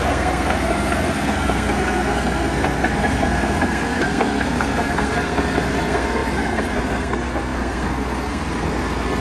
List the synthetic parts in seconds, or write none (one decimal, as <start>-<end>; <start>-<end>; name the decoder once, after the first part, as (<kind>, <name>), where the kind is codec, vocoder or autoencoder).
0.0-9.2 (codec, SNAC)